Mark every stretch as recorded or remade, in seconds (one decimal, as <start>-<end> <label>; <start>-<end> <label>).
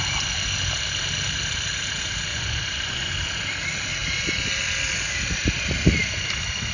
0.0-2.3 recorded; 2.3-3.1 remade; 3.1-6.7 recorded